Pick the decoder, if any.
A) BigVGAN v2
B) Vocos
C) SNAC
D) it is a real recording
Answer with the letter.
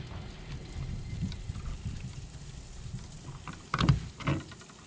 D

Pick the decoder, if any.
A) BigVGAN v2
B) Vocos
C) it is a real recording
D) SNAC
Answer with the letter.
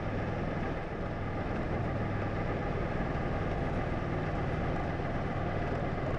C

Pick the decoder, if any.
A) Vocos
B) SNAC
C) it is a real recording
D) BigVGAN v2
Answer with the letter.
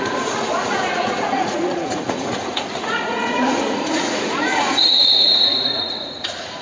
A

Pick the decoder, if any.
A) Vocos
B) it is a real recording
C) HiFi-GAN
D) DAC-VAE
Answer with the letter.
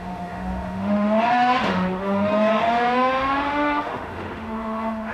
D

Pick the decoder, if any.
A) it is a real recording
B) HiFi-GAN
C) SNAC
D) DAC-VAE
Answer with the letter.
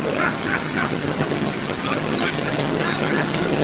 B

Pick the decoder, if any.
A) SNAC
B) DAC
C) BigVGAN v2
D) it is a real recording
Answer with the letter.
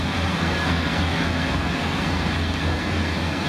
A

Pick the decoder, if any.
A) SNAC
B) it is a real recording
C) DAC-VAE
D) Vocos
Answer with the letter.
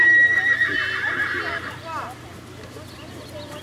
B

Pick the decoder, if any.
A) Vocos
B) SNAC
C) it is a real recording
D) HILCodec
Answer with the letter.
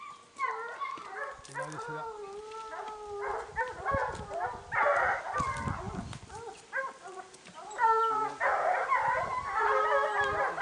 C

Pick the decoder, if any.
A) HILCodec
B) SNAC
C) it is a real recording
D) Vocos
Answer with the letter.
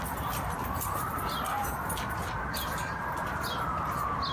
C